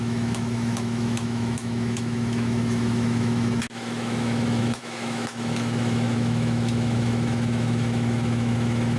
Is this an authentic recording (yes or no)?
no